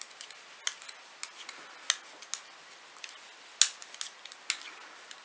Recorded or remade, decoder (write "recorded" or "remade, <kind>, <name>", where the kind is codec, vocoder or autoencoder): recorded